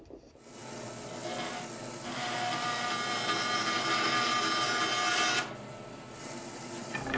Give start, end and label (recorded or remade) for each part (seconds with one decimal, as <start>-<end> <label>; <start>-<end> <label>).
0.0-7.2 recorded